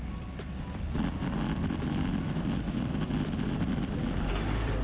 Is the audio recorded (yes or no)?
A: yes